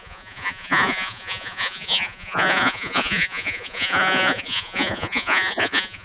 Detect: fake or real fake